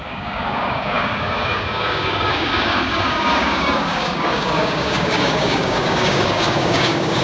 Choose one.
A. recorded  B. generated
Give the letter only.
B